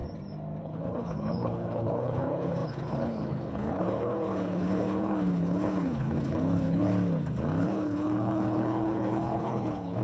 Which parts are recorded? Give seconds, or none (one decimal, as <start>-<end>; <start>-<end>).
0.0-0.6; 6.9-7.6